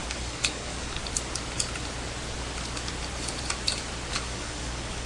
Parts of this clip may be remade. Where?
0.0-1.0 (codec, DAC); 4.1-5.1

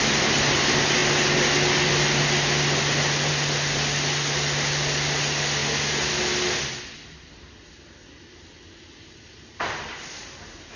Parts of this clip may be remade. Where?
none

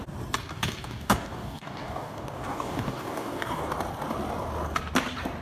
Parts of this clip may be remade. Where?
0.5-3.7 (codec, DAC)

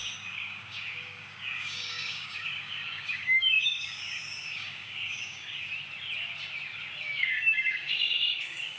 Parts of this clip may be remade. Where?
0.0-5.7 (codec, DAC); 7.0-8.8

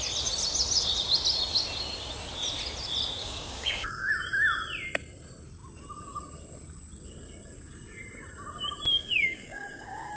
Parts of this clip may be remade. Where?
3.2-4.1 (codec, DAC); 8.9-10.2

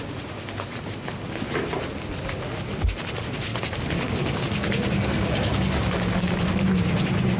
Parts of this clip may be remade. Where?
3.5-6.7 (codec, DAC)

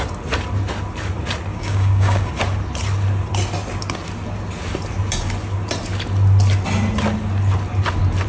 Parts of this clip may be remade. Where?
1.5-2.3 (codec, DAC)

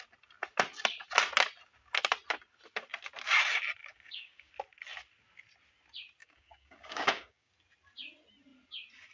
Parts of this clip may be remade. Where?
3.8-4.5 (codec, DAC); 6.2-7.5